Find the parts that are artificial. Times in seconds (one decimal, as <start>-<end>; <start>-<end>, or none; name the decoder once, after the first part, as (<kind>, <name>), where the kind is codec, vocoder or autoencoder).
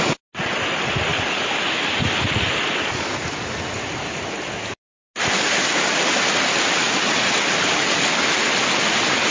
1.1-4.2 (vocoder, BigVGAN v2)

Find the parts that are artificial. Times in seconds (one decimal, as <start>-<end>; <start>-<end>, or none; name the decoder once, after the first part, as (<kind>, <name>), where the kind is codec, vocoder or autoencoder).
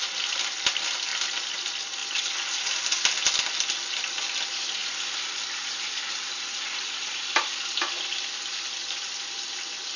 0.0-1.1 (vocoder, BigVGAN v2); 1.6-2.0; 4.0-10.0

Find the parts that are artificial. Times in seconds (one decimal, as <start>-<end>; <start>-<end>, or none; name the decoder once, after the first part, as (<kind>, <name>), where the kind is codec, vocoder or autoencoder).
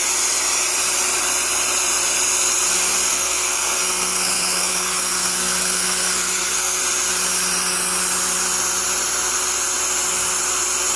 3.1-6.8 (codec, SNAC)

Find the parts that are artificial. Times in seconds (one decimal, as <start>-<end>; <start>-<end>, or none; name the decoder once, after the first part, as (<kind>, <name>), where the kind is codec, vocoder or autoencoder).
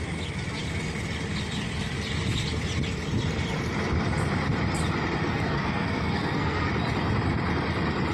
5.2-6.7 (codec, SNAC)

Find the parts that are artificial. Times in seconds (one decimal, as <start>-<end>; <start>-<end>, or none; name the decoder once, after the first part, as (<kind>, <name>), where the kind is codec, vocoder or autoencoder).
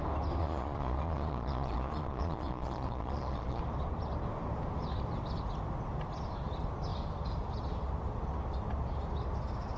0.4-3.6 (vocoder, Vocos)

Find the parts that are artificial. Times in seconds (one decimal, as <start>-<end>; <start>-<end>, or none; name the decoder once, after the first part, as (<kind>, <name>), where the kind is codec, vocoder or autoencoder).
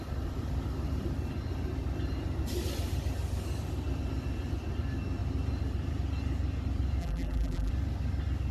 7.0-7.7 (vocoder, BigVGAN v2)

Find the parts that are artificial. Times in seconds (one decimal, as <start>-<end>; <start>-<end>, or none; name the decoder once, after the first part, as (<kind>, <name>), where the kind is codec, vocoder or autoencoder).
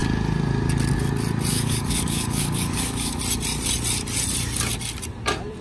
1.5-3.2 (codec, DAC)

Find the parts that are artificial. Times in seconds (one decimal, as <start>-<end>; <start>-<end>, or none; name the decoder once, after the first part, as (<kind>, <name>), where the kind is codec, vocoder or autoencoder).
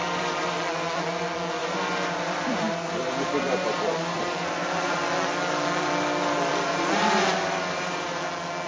0.0-0.6 (vocoder, BigVGAN v2); 1.6-5.0; 6.5-8.2